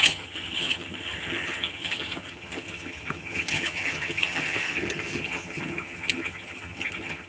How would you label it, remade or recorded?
remade